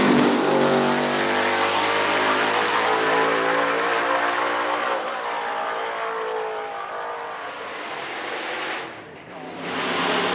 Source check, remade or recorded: recorded